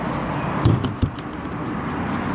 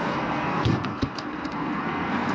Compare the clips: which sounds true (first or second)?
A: first